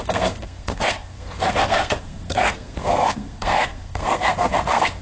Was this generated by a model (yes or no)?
yes